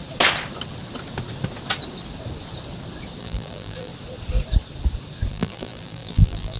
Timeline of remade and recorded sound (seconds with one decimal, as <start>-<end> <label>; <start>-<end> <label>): 0.0-3.2 recorded; 3.2-3.9 remade; 3.9-5.3 recorded; 5.3-6.6 remade

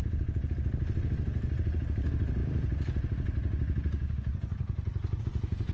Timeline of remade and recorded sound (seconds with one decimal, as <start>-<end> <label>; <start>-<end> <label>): 0.0-5.7 recorded

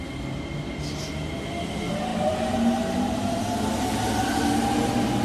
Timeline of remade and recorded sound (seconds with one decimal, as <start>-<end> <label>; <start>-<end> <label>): 0.0-2.1 recorded; 2.1-3.4 remade; 3.4-5.2 recorded

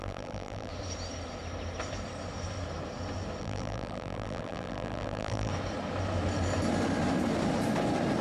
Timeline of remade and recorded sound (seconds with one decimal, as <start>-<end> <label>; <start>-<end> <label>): 0.0-0.7 remade; 0.7-3.4 recorded; 3.4-5.5 remade; 5.5-8.2 recorded

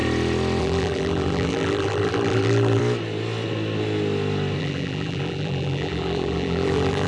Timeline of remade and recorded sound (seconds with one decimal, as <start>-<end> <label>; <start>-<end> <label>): 0.0-0.6 recorded; 0.6-2.8 remade; 2.8-4.6 recorded; 4.6-7.1 remade

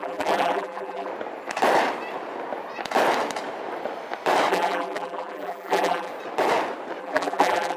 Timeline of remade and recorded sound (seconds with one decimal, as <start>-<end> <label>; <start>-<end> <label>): 0.0-1.1 remade; 1.1-4.5 recorded; 4.5-6.1 remade; 6.1-7.0 recorded; 7.0-7.8 remade